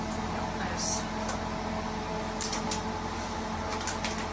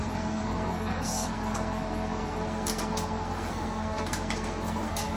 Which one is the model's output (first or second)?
second